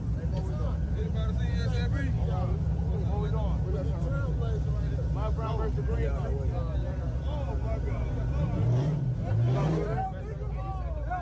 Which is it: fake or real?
real